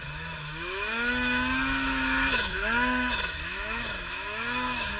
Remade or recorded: remade